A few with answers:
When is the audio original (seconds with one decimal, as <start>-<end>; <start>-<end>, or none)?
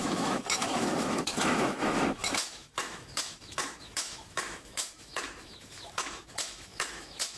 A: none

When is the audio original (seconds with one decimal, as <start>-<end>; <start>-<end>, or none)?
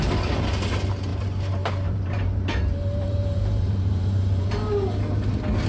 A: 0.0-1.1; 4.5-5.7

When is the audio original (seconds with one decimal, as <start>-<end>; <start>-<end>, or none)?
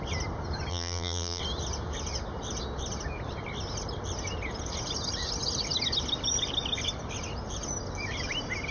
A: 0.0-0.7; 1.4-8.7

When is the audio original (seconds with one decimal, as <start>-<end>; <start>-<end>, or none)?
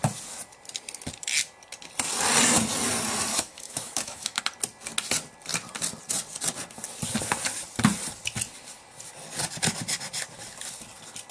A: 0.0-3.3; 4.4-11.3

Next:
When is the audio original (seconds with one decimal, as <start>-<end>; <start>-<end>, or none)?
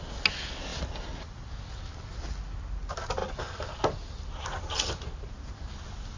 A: 0.0-0.7; 1.5-6.2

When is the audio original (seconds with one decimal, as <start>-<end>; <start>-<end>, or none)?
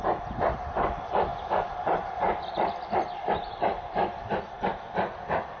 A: 0.0-1.3; 4.4-5.6